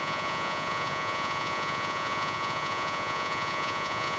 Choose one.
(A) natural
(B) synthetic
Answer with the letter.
B